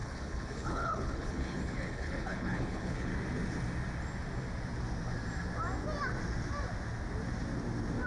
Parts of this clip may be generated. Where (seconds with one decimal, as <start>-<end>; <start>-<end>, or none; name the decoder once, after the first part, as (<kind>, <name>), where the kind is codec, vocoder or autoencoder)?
0.0-3.1 (codec, HILCodec)